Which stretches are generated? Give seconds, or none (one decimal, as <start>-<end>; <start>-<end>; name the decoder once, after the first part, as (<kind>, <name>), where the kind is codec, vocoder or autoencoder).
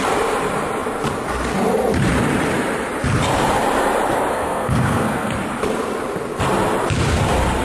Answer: 4.3-5.3 (codec, SNAC)